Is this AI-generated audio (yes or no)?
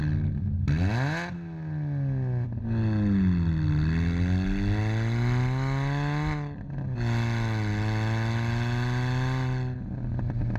no